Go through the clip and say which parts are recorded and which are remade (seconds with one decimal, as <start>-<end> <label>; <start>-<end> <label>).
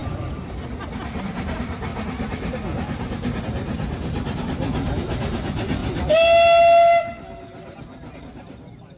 0.0-1.2 recorded; 1.2-1.9 remade; 1.9-3.4 recorded; 3.4-5.8 remade; 5.8-8.2 recorded; 8.2-9.0 remade